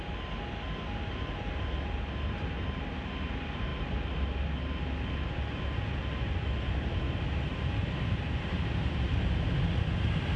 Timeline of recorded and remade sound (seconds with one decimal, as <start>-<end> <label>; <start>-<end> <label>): 0.0-7.5 recorded; 7.5-9.1 remade; 9.1-10.4 recorded